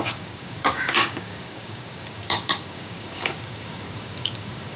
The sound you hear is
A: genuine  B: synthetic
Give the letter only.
B